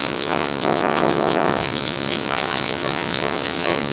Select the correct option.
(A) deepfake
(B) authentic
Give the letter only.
A